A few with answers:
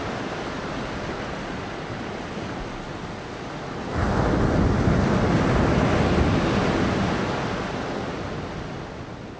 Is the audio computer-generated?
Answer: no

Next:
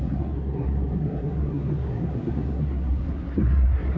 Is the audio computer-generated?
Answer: yes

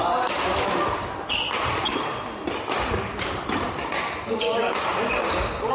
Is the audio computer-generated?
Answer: no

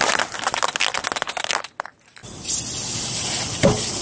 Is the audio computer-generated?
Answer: no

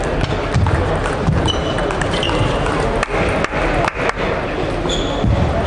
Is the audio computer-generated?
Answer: no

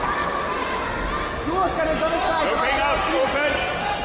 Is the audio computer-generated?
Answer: no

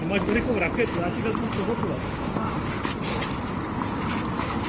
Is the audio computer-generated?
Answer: no